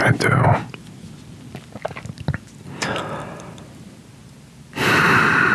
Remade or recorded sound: recorded